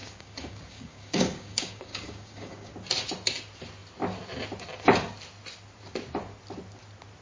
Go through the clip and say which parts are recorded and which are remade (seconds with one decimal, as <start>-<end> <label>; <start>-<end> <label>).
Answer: 0.0-2.7 remade; 2.7-7.2 recorded